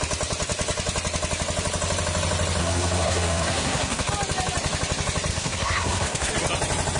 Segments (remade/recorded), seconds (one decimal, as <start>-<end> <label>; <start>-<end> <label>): 0.0-2.6 recorded; 2.6-4.1 remade; 4.1-5.3 recorded; 5.3-6.3 remade; 6.3-7.0 recorded